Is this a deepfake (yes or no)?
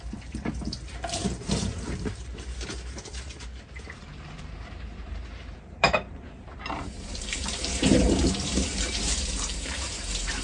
yes